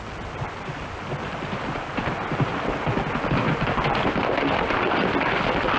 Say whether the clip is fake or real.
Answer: real